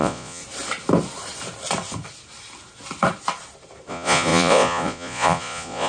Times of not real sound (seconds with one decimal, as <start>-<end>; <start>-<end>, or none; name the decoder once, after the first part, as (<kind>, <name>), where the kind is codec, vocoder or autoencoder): 0.0-0.4 (vocoder, Vocos); 3.9-5.9